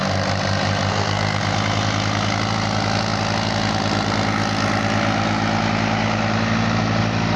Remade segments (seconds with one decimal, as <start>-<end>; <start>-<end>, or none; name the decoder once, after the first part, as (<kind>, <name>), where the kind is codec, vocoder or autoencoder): 0.9-1.4 (codec, SNAC)